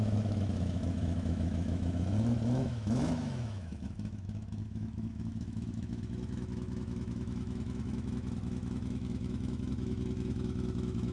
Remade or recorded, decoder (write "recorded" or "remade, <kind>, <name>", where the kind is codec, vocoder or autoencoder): remade, autoencoder, DAC-VAE